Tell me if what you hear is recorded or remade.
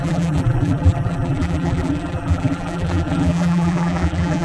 remade